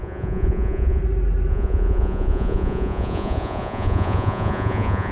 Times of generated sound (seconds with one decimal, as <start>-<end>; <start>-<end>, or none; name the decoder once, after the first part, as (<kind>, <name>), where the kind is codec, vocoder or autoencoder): 0.0-1.0 (vocoder, Vocos); 1.5-5.1